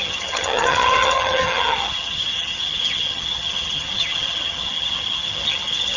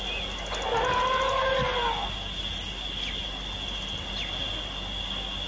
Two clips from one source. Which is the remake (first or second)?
first